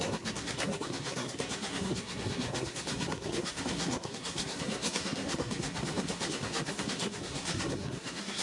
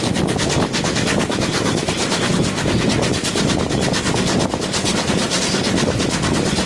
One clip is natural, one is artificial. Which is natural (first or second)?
second